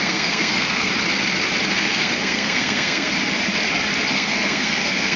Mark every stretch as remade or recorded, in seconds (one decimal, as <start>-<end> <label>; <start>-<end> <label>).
0.0-0.9 remade; 0.9-1.7 recorded; 1.7-3.1 remade; 3.1-4.1 recorded; 4.1-5.2 remade